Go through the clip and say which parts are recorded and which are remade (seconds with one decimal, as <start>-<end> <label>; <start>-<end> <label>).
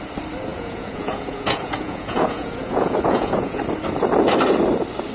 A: 0.0-0.5 recorded; 0.5-3.6 remade; 3.6-5.1 recorded